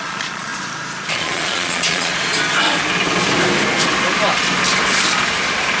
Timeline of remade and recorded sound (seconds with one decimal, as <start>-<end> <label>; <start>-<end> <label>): 0.0-0.5 remade; 0.5-1.1 recorded; 1.1-2.1 remade; 2.1-5.8 recorded